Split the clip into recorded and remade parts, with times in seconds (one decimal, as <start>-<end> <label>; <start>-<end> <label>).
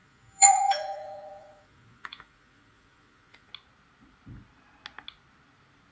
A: 0.0-3.5 remade; 3.5-5.9 recorded